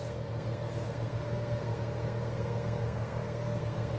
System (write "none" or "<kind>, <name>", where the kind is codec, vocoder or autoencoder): codec, SNAC